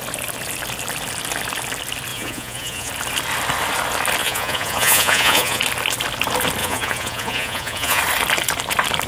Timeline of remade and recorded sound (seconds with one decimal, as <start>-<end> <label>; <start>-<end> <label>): 0.0-2.1 recorded; 2.1-2.9 remade; 2.9-4.2 recorded; 4.2-5.6 remade; 5.6-6.6 recorded; 6.6-8.0 remade; 8.0-9.1 recorded

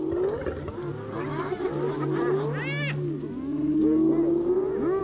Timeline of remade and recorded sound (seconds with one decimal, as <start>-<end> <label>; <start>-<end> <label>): 0.0-5.0 recorded

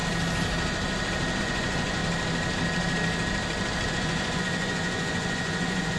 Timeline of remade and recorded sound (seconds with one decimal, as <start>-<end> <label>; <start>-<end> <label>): 0.0-1.4 recorded; 1.4-2.0 remade; 2.0-3.9 recorded; 3.9-6.0 remade

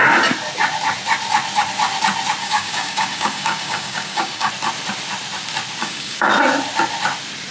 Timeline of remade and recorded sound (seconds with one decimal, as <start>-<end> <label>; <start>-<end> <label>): 0.0-2.4 recorded; 2.4-4.5 remade; 4.5-5.8 recorded; 5.8-6.3 remade; 6.3-7.5 recorded

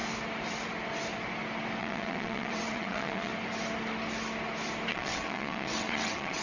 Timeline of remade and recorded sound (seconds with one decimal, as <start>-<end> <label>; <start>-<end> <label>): 0.0-1.8 recorded; 1.8-3.3 remade; 3.3-4.9 recorded; 4.9-6.4 remade